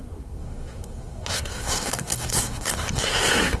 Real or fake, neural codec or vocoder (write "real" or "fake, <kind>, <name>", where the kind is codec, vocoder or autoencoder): fake, codec, SNAC